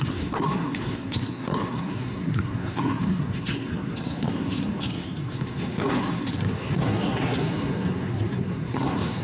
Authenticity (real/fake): fake